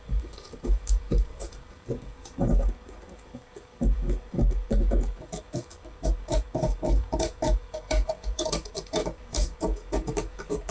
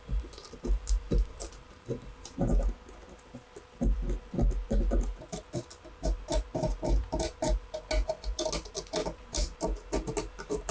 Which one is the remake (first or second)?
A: first